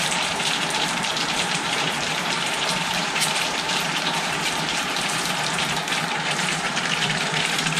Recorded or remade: remade